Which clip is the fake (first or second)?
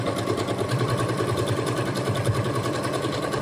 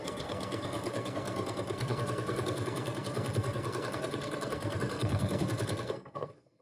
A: second